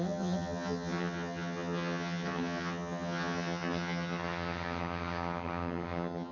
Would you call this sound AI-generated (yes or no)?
yes